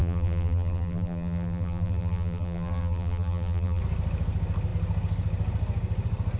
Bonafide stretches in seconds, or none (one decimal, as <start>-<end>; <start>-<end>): 3.8-6.4